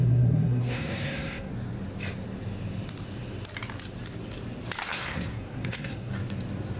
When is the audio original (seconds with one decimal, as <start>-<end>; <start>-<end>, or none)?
1.5-4.9; 6.1-6.8